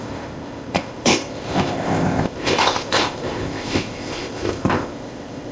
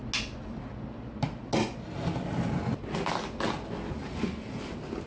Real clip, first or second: second